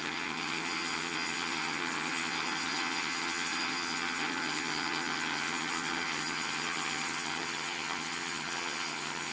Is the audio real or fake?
fake